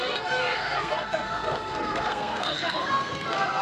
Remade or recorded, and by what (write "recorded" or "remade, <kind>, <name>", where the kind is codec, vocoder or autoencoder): remade, codec, SNAC